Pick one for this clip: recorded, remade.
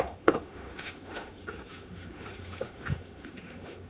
remade